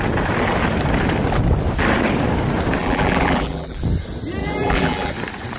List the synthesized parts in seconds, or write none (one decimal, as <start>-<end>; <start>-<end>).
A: 2.8-3.8; 4.4-5.1